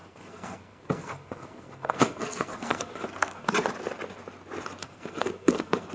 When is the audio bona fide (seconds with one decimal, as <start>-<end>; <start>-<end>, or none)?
3.5-4.8